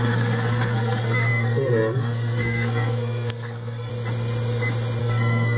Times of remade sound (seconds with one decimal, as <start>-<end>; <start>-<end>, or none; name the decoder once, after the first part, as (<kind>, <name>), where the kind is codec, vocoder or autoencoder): 0.0-3.9 (codec, SNAC); 5.0-5.6